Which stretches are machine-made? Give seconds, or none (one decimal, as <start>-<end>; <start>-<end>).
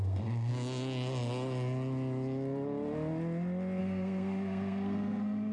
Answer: 0.0-0.5; 3.8-5.5